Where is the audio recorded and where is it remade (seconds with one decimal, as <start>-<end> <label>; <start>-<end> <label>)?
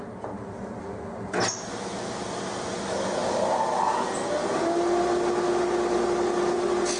0.0-7.0 recorded